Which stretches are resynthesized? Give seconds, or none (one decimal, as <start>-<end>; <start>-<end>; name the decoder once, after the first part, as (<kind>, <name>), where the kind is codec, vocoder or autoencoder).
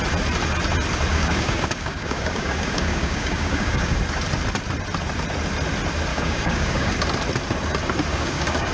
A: 1.1-4.0 (codec, DAC); 6.1-6.9; 8.1-8.7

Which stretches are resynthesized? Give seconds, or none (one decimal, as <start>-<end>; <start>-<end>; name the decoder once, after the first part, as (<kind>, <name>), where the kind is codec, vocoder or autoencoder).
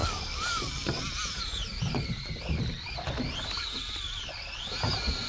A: 0.0-1.0 (codec, DAC)